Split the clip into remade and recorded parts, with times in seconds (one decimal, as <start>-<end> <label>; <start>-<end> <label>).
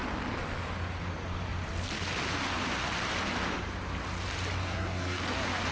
0.0-4.6 recorded; 4.6-5.2 remade; 5.2-5.7 recorded